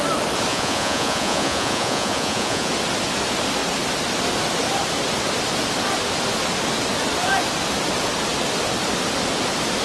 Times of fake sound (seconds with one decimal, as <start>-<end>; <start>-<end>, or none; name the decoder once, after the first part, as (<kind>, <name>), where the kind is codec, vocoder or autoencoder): 0.5-2.7 (vocoder, Vocos)